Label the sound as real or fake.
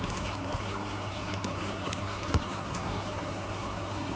fake